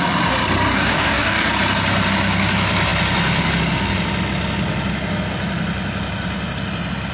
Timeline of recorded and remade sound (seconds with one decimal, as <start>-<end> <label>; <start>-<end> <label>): 0.0-0.7 recorded; 0.7-1.5 remade; 1.5-7.1 recorded